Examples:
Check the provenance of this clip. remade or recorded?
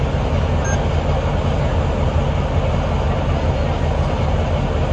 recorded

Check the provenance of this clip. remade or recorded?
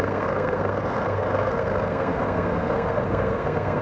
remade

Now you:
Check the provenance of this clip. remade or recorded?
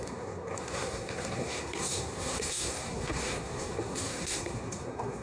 remade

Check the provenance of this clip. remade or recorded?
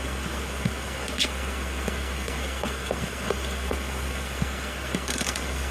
remade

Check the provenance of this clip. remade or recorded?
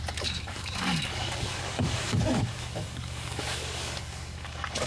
remade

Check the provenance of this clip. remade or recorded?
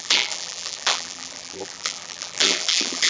remade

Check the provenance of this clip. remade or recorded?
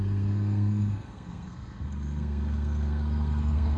remade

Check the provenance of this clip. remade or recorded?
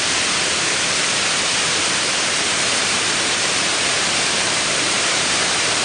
remade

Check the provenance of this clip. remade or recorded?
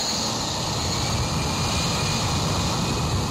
recorded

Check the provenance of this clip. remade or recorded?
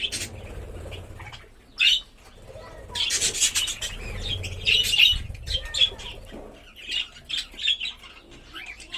recorded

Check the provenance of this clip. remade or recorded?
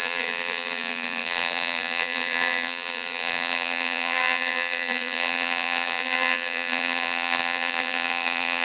remade